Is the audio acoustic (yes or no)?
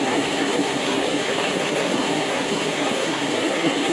no